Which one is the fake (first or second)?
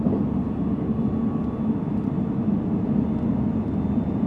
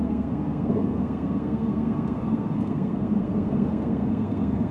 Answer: second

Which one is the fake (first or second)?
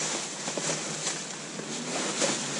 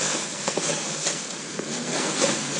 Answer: second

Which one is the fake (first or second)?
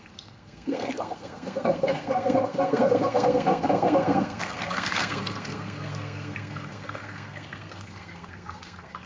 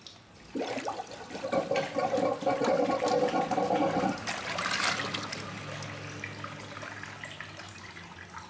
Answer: first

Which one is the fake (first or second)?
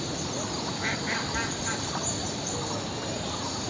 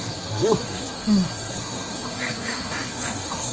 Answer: second